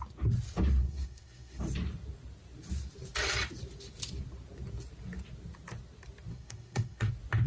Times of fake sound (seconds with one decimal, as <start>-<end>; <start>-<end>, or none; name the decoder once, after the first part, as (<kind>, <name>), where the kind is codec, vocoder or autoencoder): 0.8-1.6 (codec, SNAC); 6.3-7.1